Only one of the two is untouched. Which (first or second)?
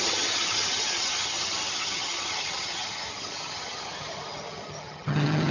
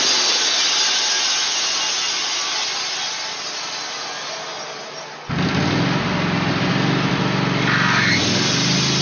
second